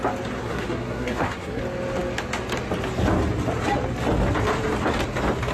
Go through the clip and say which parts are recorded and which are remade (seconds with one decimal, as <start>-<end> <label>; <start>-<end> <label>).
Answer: 0.0-0.4 recorded; 0.4-1.6 remade; 1.6-5.5 recorded